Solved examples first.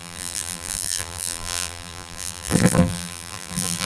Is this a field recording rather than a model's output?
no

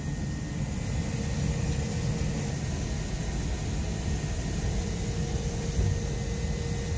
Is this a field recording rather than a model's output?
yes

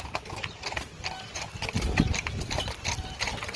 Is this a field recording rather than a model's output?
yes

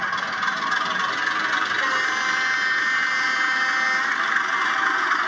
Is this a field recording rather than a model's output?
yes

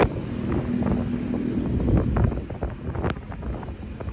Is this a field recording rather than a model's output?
yes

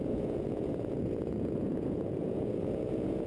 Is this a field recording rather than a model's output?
no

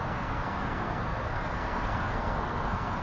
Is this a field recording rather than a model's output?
no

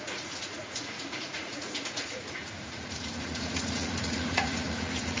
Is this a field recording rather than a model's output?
no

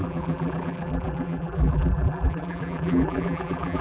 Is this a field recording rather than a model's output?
no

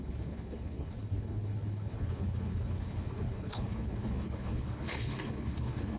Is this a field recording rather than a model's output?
no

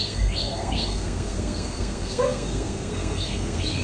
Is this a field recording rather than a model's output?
no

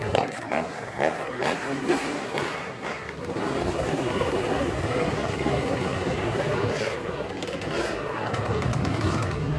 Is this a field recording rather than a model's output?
no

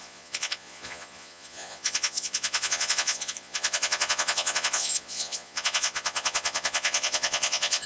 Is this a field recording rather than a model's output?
no